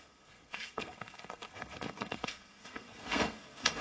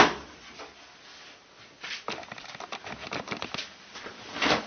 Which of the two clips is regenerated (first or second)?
first